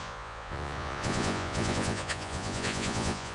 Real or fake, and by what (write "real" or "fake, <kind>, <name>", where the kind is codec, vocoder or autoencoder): fake, vocoder, Vocos